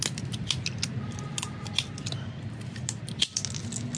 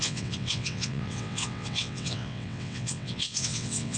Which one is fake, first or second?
second